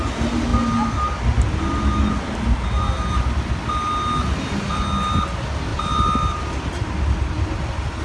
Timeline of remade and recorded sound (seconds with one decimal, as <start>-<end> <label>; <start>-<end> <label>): 0.0-8.0 recorded